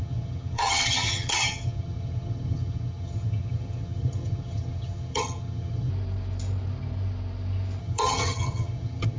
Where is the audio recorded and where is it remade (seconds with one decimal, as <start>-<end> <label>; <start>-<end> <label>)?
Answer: 0.0-5.9 remade; 5.9-7.8 recorded; 7.8-9.2 remade